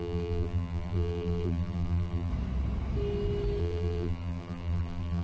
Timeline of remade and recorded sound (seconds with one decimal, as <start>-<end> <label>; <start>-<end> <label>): 0.0-2.3 remade; 2.3-3.6 recorded; 3.6-5.2 remade